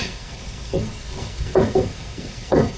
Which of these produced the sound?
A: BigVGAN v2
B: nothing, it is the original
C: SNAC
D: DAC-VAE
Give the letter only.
C